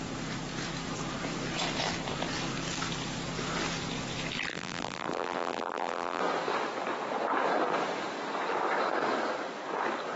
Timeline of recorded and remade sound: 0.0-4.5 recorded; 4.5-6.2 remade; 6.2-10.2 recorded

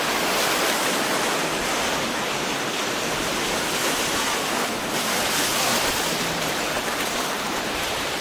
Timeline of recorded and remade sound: 0.0-5.7 recorded; 5.7-8.2 remade